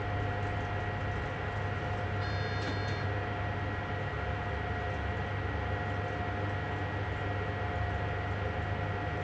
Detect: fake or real real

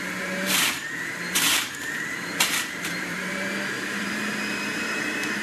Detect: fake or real fake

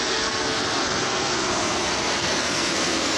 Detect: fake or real fake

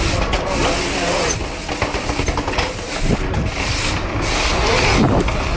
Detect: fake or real real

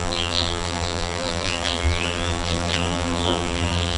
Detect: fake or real fake